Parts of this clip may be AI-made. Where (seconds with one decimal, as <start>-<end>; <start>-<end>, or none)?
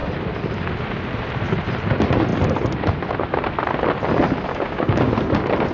4.5-5.1